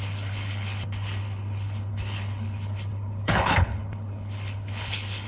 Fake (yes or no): yes